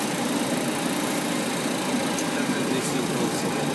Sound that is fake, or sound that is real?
real